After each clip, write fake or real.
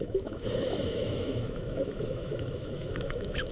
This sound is fake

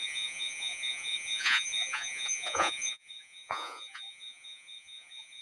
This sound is fake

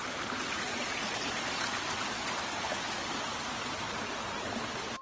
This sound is real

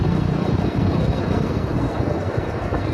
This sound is fake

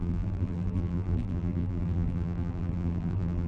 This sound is fake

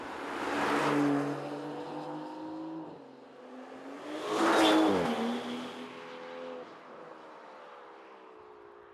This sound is real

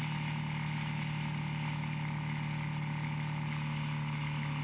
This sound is real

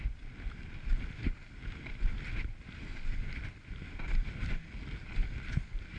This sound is real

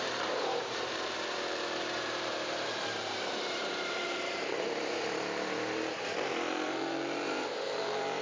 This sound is fake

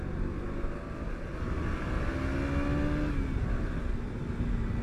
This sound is real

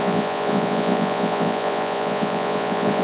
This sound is fake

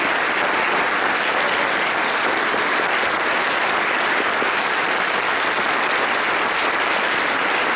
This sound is real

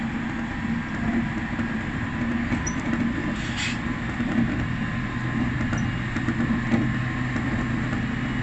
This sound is real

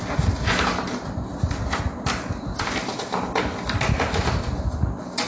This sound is real